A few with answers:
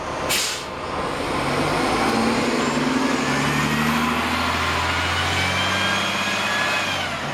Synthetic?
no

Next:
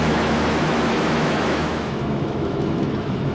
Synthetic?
yes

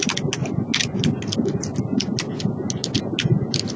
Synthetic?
no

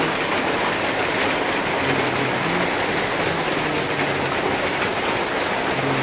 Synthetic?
no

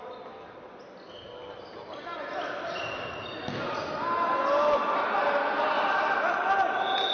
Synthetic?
no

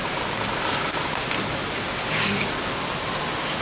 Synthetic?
no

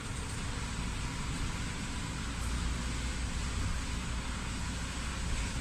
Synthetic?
no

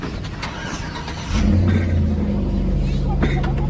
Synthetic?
no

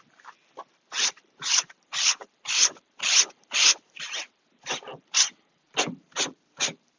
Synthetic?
yes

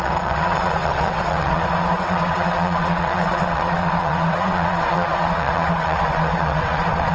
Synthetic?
yes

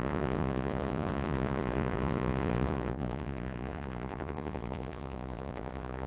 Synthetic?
yes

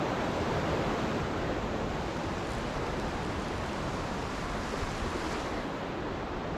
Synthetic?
no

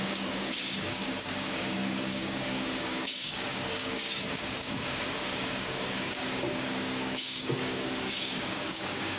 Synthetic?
yes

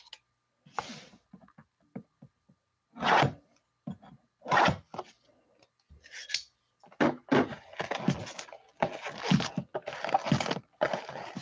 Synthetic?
no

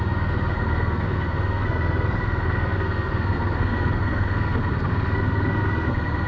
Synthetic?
yes